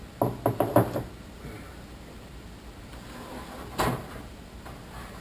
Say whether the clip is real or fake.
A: real